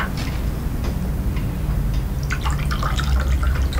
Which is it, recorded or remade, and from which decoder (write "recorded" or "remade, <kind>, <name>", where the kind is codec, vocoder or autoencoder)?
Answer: recorded